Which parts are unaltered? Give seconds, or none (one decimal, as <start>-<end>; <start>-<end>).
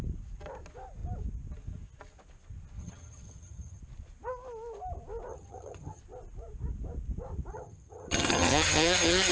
0.0-2.8; 3.8-5.3; 6.0-7.5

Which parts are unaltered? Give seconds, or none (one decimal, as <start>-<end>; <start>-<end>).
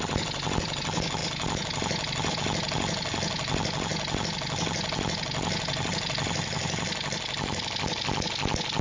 0.0-8.8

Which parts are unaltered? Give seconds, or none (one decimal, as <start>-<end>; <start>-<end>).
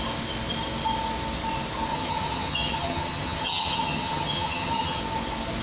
0.0-1.9; 5.0-5.6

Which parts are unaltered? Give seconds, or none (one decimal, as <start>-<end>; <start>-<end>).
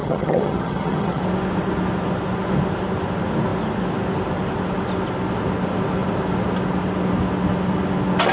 1.2-8.3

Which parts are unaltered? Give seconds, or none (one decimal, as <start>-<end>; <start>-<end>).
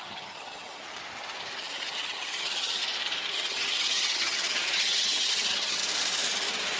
0.8-1.6; 2.8-3.3; 5.8-6.8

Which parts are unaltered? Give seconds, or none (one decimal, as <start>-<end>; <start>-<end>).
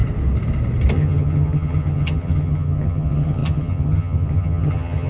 0.0-0.9